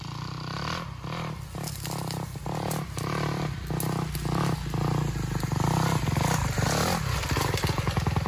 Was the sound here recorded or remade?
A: recorded